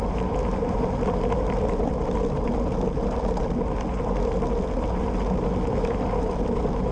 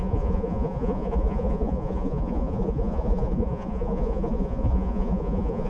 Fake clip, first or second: second